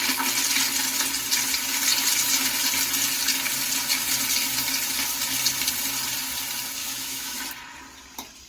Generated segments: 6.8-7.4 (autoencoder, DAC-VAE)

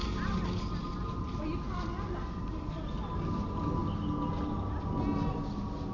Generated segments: none

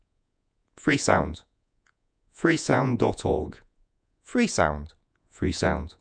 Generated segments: 0.0-4.3 (vocoder, Vocos); 5.0-6.0

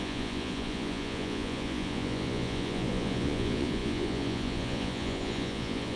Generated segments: 0.0-6.0 (vocoder, Vocos)

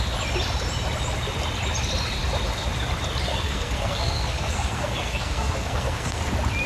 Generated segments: 3.3-6.2 (codec, SNAC)

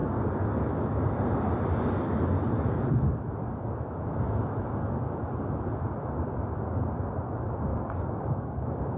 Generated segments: 0.0-0.6 (codec, DAC); 7.7-9.0